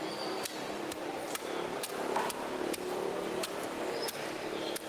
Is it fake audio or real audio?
real